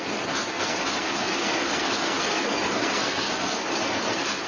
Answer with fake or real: fake